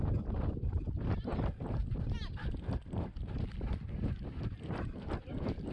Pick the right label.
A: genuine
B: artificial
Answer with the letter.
A